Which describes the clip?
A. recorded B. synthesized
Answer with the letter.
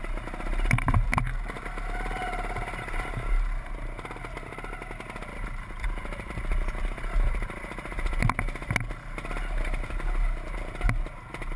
A